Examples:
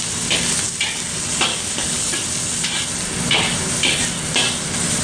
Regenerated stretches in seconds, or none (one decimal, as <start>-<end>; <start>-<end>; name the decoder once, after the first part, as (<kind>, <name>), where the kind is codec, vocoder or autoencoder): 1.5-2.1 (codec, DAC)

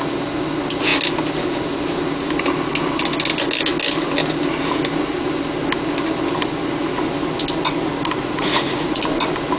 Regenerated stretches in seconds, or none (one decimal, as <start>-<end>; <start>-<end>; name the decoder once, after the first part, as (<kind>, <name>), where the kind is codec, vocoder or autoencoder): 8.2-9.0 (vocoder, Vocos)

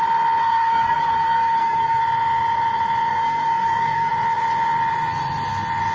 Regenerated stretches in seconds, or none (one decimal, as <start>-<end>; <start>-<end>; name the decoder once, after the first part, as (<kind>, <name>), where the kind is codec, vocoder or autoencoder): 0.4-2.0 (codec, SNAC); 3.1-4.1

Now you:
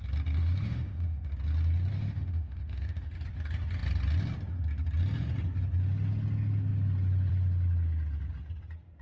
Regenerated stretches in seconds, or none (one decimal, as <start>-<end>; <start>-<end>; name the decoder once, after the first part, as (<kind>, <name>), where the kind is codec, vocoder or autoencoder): 0.4-1.3 (autoencoder, DAC-VAE); 1.9-3.1

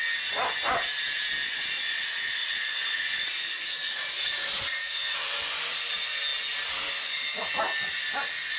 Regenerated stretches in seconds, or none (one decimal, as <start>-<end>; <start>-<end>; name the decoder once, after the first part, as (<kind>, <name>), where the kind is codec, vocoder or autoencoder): 1.5-5.4 (vocoder, Vocos)

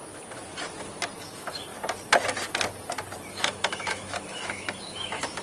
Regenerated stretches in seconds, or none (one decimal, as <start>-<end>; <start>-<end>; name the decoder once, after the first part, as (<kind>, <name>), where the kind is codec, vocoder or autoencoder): 1.2-1.7 (autoencoder, DAC-VAE); 3.3-5.4

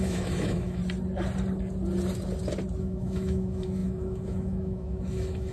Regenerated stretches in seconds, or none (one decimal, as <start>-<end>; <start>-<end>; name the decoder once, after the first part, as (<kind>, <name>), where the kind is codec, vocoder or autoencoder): 0.0-0.8 (autoencoder, DAC-VAE); 2.8-5.5